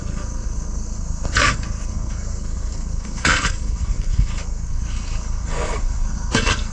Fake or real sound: fake